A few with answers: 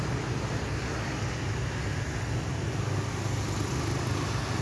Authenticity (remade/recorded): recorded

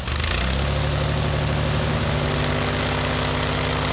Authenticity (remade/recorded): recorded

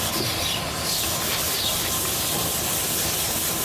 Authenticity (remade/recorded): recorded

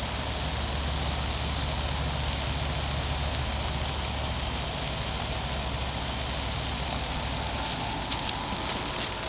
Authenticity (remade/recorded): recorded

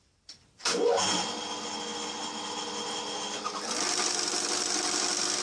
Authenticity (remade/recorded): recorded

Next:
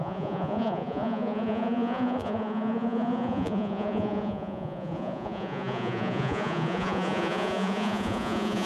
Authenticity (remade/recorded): remade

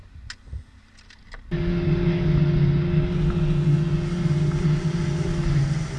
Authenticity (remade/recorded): recorded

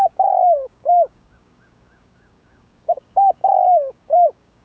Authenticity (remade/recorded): remade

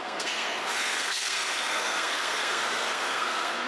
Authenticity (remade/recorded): remade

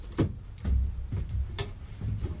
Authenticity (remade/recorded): recorded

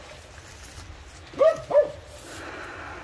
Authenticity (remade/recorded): recorded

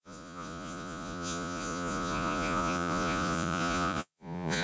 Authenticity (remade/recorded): remade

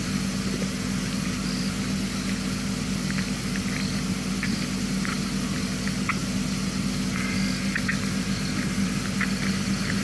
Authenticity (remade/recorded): recorded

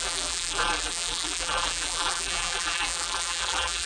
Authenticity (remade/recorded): remade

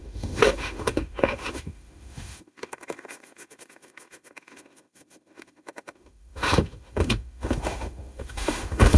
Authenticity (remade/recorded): remade